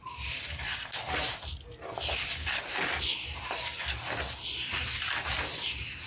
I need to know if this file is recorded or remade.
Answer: recorded